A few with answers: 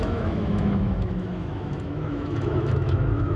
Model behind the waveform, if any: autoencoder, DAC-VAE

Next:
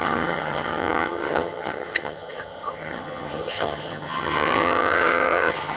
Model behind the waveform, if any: vocoder, HiFi-GAN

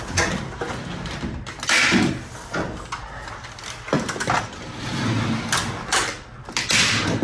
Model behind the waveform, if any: none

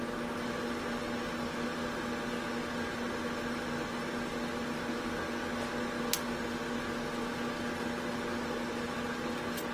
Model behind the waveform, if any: none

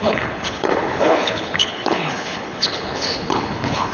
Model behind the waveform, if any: codec, HILCodec